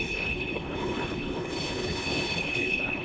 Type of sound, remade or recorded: remade